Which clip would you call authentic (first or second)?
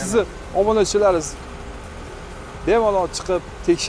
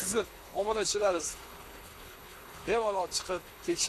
first